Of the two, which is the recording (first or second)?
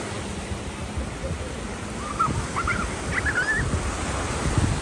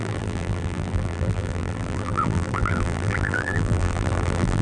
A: first